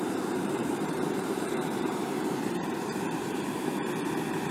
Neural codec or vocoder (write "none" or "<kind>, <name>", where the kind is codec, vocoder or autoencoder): vocoder, BigVGAN v2